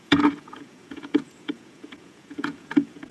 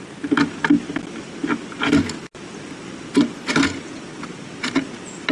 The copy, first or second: first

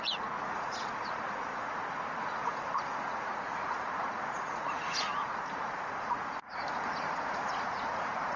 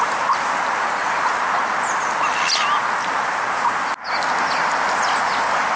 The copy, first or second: first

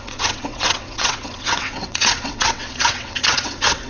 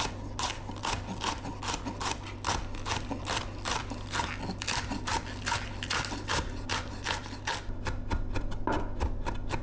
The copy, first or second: first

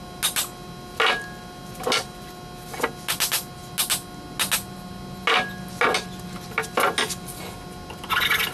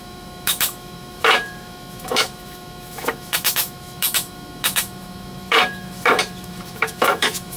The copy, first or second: second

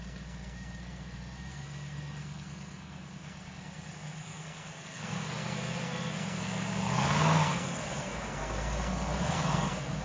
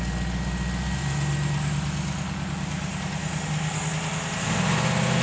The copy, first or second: first